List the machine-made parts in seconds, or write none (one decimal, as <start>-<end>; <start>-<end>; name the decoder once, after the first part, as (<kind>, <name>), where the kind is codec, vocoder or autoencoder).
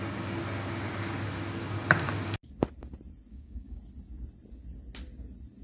3.3-3.8 (codec, DAC)